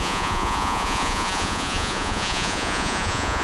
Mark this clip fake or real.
fake